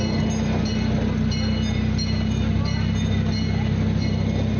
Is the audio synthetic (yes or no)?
no